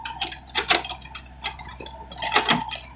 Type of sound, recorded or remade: recorded